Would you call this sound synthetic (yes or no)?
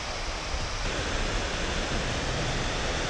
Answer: no